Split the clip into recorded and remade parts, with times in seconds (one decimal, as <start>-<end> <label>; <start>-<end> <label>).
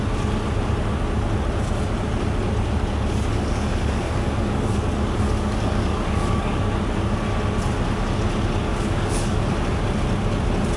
0.0-3.3 recorded; 3.3-6.6 remade; 6.6-8.7 recorded; 8.7-9.4 remade; 9.4-10.8 recorded